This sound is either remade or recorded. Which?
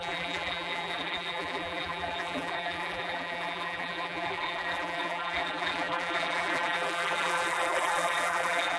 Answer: remade